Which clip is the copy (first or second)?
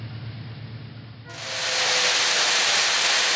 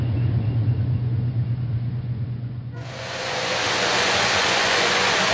second